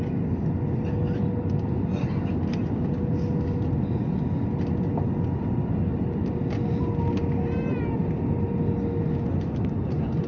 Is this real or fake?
real